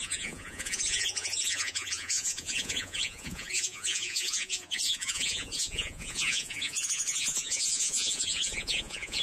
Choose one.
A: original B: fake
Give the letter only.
B